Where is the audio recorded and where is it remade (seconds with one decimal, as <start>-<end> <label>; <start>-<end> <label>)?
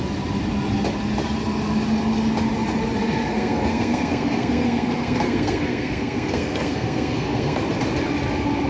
0.0-3.3 recorded; 3.3-7.6 remade; 7.6-8.7 recorded